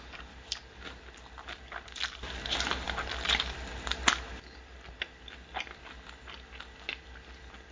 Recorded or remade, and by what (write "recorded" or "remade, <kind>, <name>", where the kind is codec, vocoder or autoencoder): recorded